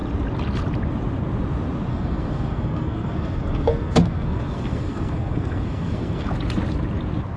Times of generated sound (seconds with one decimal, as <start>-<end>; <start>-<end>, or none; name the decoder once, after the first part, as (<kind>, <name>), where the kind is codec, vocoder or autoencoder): 1.9-6.3 (codec, SNAC)